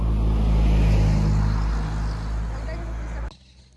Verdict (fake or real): real